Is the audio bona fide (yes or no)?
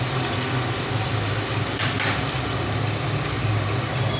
yes